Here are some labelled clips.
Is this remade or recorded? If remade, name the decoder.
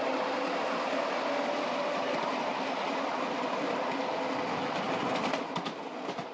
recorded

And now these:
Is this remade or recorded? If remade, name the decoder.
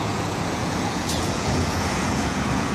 remade, vocoder, Vocos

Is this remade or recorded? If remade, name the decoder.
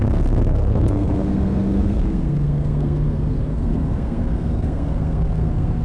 remade, codec, SNAC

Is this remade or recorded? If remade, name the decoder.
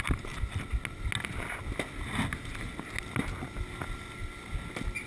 recorded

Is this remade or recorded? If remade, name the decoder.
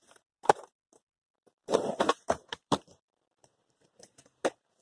remade, vocoder, BigVGAN v2